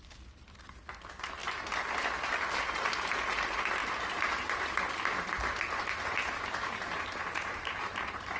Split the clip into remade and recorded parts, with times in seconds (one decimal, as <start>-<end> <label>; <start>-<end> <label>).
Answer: 0.0-3.8 recorded; 3.8-8.4 remade